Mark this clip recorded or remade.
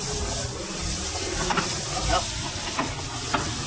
remade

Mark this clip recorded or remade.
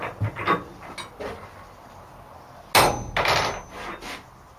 recorded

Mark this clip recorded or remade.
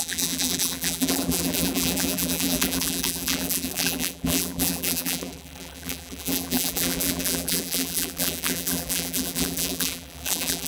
remade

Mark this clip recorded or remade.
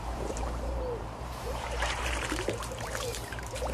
remade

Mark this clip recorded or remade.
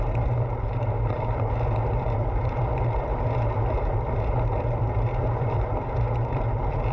remade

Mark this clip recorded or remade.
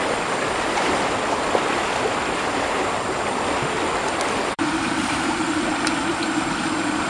remade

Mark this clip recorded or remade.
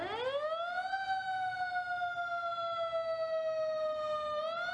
recorded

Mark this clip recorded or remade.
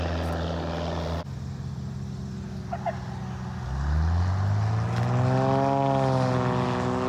recorded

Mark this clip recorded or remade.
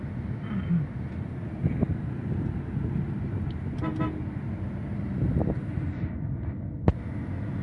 recorded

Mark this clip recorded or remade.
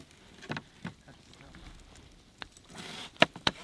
remade